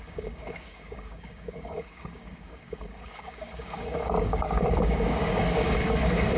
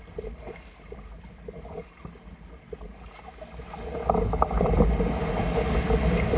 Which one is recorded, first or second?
second